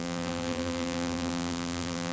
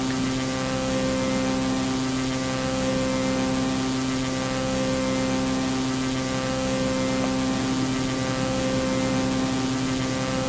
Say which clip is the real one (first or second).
second